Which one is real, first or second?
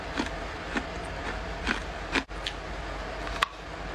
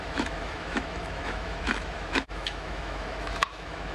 first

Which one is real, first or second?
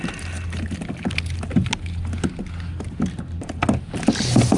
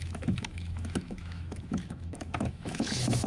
first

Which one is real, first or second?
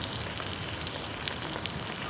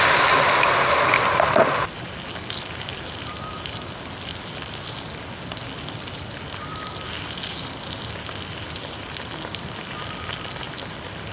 second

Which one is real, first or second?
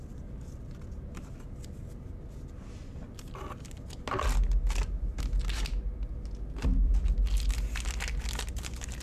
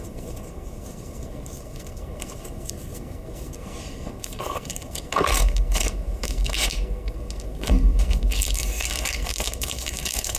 first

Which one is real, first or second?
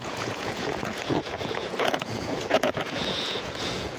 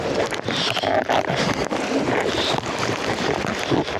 second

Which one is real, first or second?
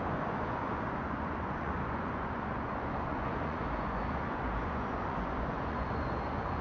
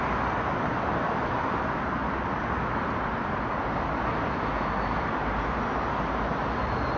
second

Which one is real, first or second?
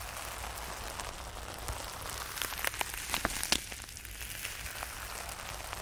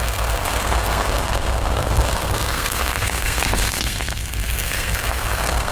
first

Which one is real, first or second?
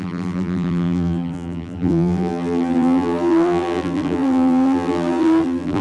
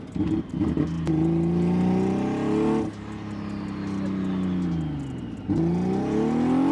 second